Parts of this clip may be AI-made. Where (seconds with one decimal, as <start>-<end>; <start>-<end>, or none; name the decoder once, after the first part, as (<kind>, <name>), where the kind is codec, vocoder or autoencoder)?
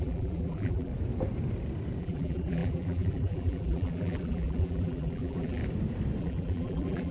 0.0-0.9 (vocoder, BigVGAN v2); 2.0-5.6; 6.2-7.1